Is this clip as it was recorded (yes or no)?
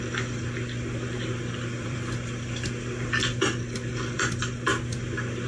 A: no